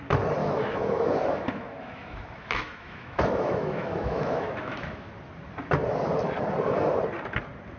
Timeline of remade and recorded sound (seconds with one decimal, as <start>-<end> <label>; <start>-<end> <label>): 0.0-0.4 recorded; 0.4-5.1 remade; 5.1-7.8 recorded